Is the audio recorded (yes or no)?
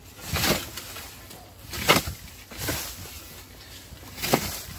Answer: yes